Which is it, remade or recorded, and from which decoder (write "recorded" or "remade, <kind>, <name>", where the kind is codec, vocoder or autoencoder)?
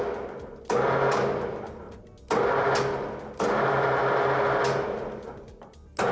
recorded